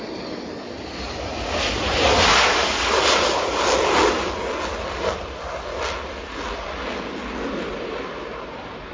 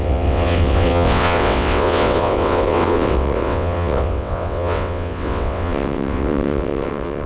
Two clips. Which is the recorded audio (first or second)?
first